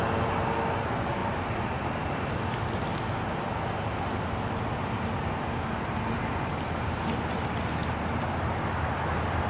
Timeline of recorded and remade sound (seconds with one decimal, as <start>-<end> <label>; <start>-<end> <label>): 0.0-1.2 recorded; 1.2-2.3 remade; 2.3-7.8 recorded; 7.8-9.5 remade